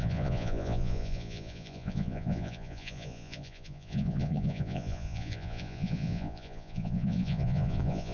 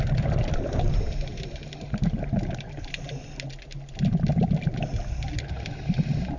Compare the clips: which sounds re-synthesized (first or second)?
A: first